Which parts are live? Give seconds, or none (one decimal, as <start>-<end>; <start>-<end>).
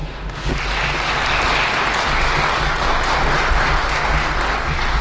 0.5-5.0